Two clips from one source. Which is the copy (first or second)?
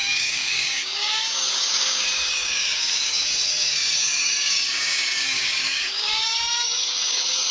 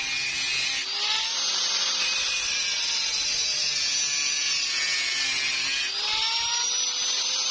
first